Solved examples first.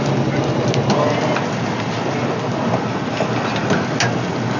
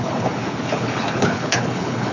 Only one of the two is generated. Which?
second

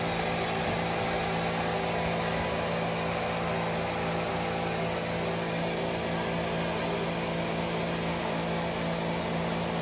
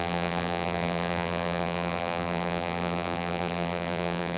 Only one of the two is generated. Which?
second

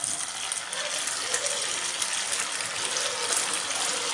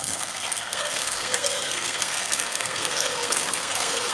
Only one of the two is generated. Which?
second